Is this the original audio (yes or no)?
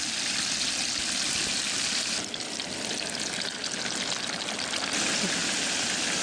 yes